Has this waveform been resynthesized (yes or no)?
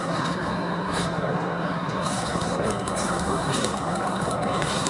yes